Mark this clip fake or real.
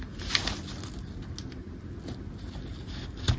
real